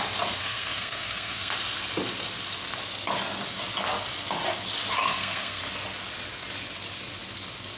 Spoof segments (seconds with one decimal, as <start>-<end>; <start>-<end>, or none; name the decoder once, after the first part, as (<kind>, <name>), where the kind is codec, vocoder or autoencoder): 0.4-1.5 (codec, SNAC); 5.0-5.6